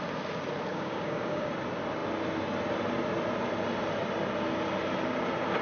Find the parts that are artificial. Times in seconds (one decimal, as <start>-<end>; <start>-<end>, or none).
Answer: 0.7-1.5